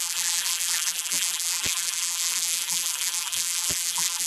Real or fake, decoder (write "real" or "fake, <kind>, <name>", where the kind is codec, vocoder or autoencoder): fake, vocoder, BigVGAN v2